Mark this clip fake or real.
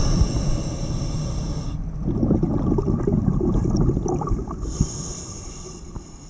real